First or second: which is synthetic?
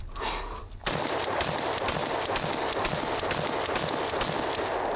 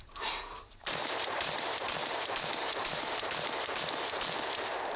second